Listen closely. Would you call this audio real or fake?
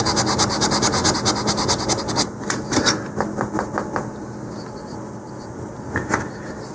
real